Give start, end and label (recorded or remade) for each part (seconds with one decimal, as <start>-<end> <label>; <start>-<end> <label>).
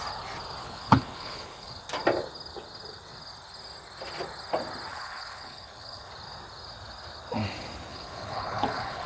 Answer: 0.0-0.6 recorded; 0.6-1.7 remade; 1.7-4.9 recorded; 4.9-6.1 remade; 6.1-7.9 recorded; 7.9-9.1 remade